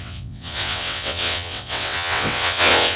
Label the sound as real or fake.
fake